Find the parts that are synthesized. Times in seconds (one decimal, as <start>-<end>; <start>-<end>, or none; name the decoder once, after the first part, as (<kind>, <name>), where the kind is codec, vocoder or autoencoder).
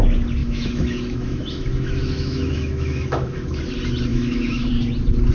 0.4-3.6 (autoencoder, DAC-VAE); 4.1-4.7